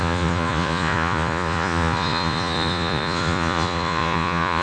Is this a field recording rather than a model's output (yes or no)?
no